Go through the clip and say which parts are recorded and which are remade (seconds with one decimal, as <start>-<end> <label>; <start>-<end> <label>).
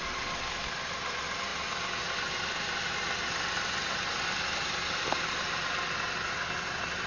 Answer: 0.0-7.1 recorded